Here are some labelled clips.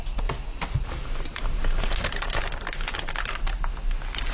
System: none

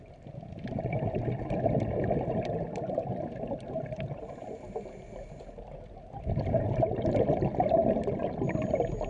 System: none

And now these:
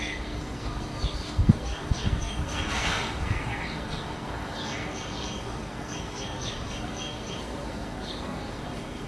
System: codec, SNAC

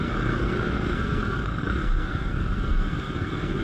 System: codec, SNAC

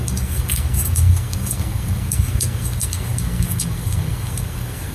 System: codec, SNAC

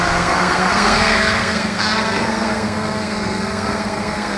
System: codec, SNAC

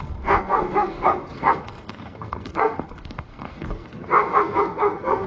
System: codec, SNAC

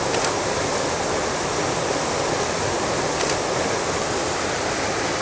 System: none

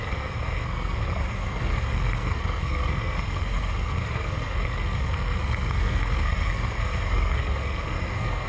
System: codec, SNAC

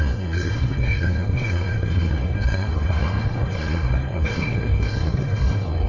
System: codec, SNAC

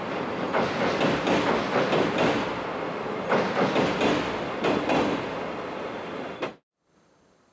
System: none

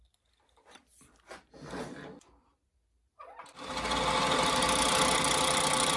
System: none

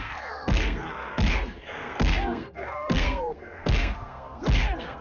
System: codec, SNAC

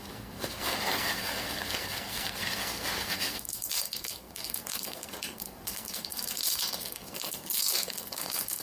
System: codec, SNAC